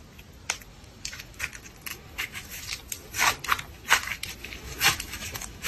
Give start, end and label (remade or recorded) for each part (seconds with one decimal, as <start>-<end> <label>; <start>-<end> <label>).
0.0-0.7 recorded; 0.7-1.4 remade; 1.4-1.9 recorded; 1.9-2.6 remade; 2.6-4.4 recorded; 4.4-5.7 remade